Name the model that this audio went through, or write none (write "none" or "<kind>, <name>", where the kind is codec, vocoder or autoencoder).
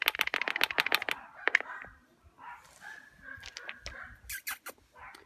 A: none